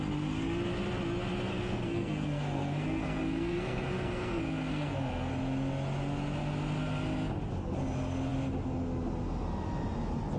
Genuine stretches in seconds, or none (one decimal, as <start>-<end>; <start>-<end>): 0.0-1.5; 5.3-10.4